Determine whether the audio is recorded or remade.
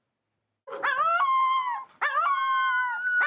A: recorded